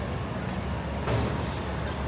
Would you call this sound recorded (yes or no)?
yes